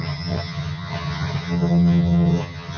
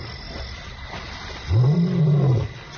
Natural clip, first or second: second